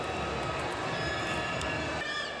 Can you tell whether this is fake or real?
real